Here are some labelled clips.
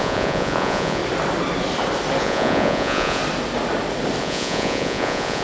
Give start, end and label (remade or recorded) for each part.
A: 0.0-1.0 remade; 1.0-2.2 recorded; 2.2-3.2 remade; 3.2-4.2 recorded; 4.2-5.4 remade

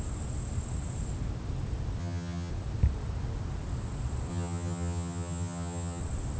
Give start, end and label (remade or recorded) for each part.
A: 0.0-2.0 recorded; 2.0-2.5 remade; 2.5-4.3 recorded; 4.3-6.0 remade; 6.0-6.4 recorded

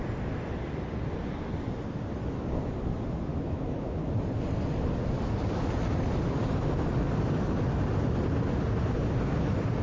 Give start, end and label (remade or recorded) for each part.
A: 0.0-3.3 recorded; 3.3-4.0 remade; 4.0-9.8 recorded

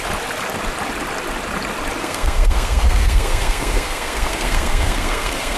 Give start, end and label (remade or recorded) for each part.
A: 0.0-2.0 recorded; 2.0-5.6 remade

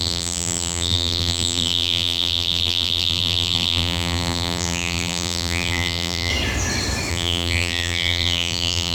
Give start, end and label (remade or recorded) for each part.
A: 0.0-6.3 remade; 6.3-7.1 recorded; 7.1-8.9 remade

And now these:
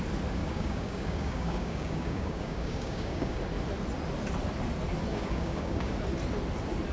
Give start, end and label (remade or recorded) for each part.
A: 0.0-0.4 recorded; 0.4-3.4 remade; 3.4-5.1 recorded; 5.1-5.9 remade; 5.9-6.9 recorded